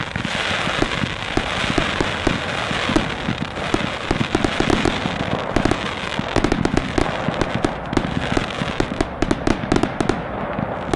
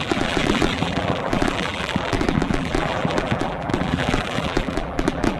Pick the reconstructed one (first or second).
second